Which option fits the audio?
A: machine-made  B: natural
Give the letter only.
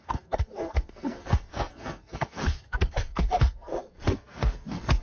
A